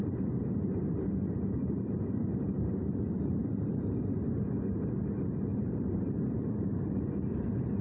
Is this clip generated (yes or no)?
yes